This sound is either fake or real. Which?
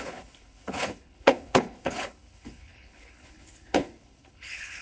fake